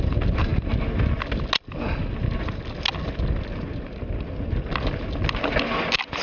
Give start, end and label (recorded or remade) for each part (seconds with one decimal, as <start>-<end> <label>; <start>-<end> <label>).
0.0-6.2 recorded